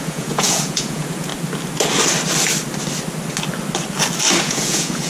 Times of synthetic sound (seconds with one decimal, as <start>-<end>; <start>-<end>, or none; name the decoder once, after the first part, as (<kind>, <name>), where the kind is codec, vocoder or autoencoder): 0.0-1.3 (vocoder, Vocos); 4.4-5.1